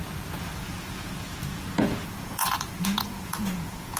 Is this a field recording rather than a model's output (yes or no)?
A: no